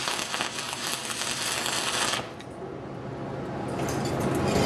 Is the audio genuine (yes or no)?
yes